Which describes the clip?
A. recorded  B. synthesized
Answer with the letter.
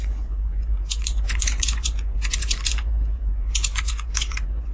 B